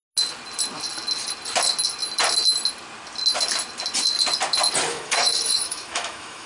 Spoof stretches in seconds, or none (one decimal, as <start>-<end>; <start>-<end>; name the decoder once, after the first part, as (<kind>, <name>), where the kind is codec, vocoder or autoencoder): 4.9-6.5 (autoencoder, DAC-VAE)